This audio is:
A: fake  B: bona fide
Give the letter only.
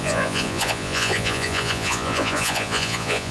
A